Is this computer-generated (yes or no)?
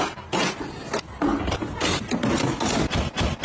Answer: no